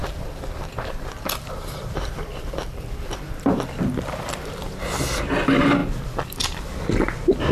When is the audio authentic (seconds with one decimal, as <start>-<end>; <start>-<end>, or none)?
4.5-5.8; 6.7-7.5